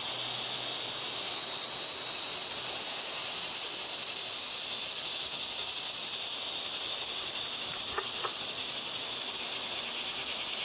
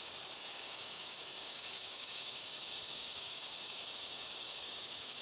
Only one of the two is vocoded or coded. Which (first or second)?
second